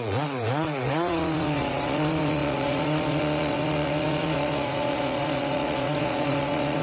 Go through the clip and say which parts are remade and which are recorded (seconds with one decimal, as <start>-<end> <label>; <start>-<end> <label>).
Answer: 0.0-6.8 remade